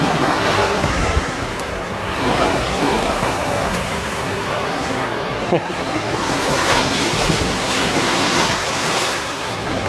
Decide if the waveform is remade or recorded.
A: remade